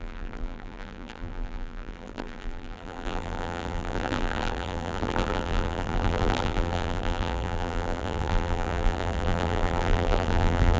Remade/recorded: remade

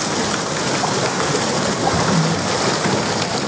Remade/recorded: recorded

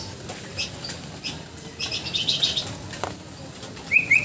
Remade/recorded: recorded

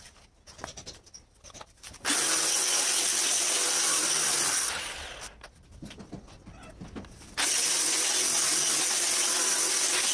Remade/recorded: recorded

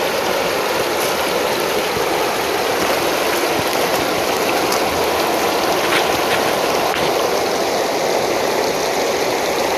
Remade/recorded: recorded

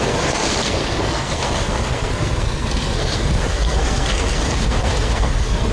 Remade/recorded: remade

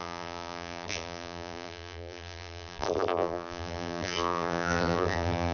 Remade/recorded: remade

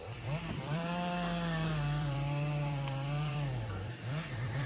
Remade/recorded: remade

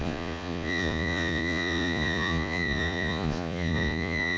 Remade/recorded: remade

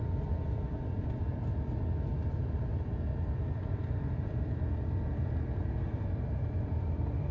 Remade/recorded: remade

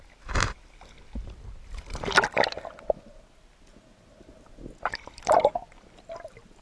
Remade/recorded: recorded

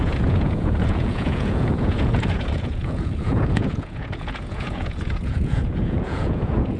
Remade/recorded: remade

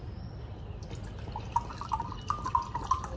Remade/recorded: recorded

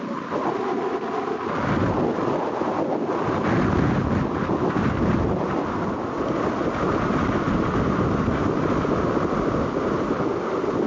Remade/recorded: recorded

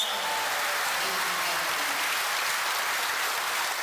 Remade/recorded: recorded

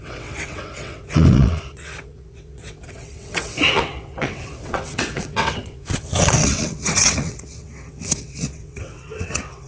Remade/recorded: remade